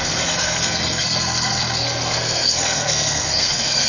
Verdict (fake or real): fake